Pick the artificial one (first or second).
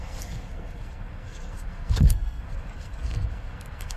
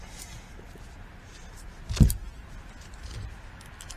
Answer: first